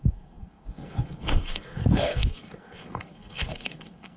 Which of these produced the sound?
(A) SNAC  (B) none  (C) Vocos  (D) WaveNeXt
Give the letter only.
A